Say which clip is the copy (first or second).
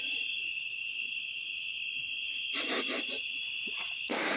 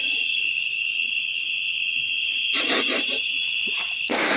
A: first